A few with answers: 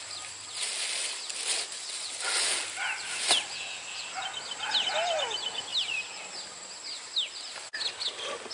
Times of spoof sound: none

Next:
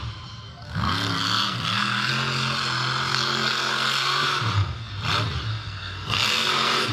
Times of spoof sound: 0.5-2.1 (codec, SNAC); 3.1-4.9; 5.5-6.9

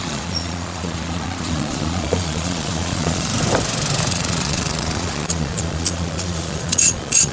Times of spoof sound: 0.0-3.3 (vocoder, Vocos); 4.1-7.3

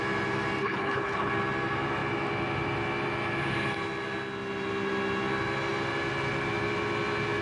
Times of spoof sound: 0.6-1.3 (codec, HILCodec)